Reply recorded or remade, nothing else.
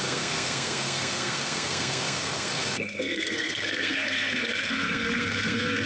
remade